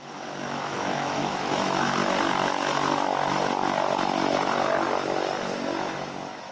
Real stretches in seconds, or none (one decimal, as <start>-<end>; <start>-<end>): 2.0-5.9